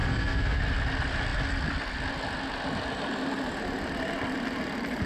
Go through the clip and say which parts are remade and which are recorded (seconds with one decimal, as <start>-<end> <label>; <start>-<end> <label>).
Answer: 0.0-0.6 remade; 0.6-5.1 recorded